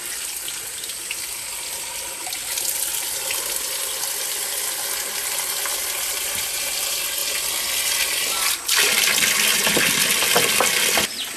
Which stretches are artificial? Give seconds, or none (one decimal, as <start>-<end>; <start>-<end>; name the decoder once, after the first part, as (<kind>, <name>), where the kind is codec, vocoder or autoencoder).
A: none